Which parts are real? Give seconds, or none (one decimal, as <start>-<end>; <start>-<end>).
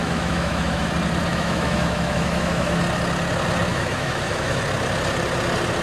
0.9-1.3; 2.8-3.7; 4.6-5.8